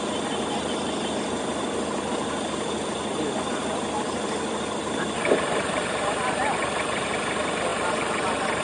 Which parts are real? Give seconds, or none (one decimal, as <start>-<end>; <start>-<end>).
0.0-8.6